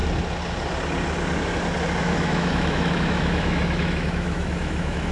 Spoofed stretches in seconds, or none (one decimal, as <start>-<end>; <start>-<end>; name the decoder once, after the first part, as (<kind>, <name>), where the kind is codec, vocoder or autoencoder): 2.0-5.1 (autoencoder, DAC-VAE)